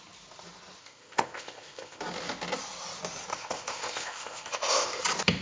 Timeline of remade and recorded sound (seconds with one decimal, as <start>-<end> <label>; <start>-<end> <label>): 0.0-0.8 recorded; 0.8-2.0 remade; 2.0-3.3 recorded; 3.3-5.0 remade; 5.0-5.4 recorded